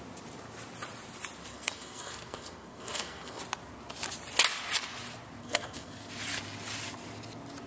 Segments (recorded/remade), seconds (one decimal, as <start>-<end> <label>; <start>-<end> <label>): 0.0-1.5 recorded; 1.5-3.4 remade; 3.4-5.4 recorded; 5.4-6.1 remade; 6.1-7.7 recorded